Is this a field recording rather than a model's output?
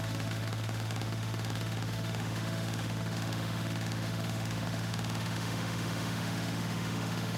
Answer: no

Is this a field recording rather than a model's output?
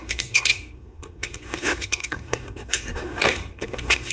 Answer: no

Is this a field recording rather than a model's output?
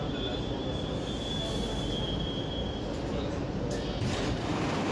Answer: yes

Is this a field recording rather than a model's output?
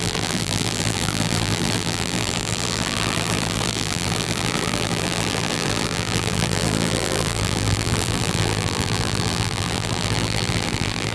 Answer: no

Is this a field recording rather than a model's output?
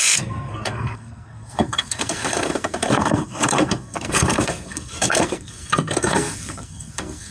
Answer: no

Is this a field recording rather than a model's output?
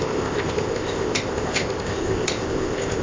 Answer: no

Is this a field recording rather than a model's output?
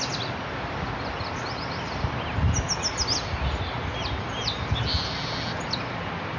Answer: yes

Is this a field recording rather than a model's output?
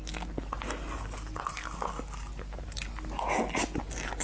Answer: yes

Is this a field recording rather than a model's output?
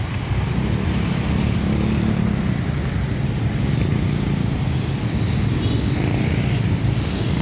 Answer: yes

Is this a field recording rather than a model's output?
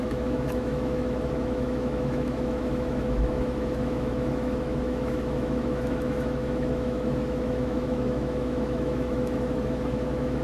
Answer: no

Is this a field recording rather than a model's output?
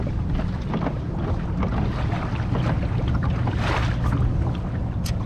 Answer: yes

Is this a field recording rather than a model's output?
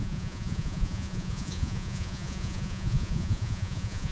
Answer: no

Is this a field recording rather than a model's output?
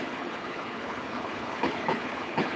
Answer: no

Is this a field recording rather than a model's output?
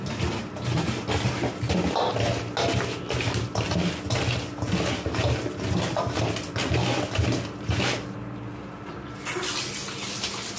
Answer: yes